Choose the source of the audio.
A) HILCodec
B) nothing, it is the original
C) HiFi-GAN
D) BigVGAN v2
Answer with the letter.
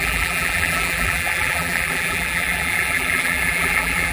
D